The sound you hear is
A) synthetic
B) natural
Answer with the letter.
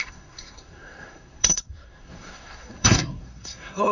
A